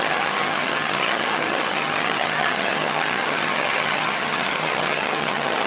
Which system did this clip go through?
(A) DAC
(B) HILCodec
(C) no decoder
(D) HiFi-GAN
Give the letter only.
D